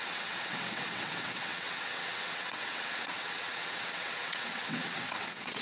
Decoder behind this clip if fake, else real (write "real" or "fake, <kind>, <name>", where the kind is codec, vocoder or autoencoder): fake, vocoder, WaveNeXt